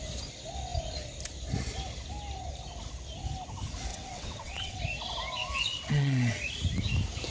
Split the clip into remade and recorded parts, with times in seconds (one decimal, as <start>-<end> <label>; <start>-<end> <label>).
0.0-3.9 recorded; 3.9-4.8 remade; 4.8-5.7 recorded; 5.7-6.4 remade; 6.4-7.3 recorded